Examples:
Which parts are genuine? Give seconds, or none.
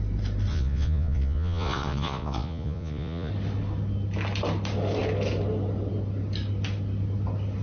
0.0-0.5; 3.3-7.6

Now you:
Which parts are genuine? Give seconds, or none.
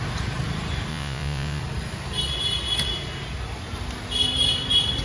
0.0-0.9; 1.6-5.0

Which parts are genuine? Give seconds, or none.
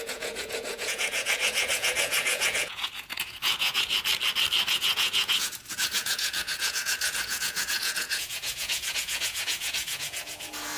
4.1-4.7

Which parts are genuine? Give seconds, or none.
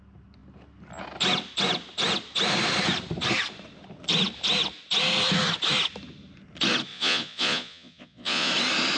0.0-6.9; 8.5-9.0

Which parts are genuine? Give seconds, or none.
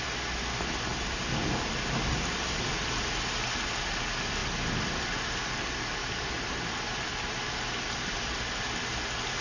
0.0-9.4